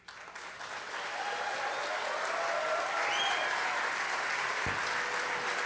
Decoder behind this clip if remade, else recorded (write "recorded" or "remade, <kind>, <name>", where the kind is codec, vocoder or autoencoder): recorded